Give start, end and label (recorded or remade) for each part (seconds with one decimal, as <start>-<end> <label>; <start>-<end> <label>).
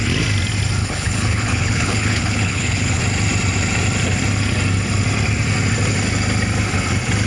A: 0.0-0.8 recorded; 0.8-3.0 remade; 3.0-7.3 recorded